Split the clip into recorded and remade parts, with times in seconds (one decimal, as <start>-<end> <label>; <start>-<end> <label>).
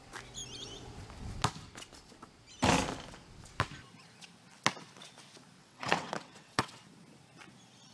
0.0-5.6 recorded; 5.6-6.8 remade; 6.8-7.9 recorded